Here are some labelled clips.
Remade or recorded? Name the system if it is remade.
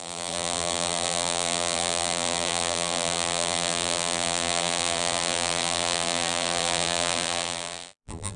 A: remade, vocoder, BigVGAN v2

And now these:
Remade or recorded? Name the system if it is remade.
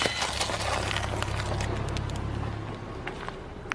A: recorded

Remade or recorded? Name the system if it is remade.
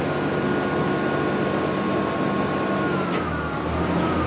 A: recorded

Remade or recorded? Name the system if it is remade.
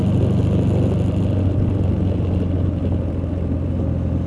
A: recorded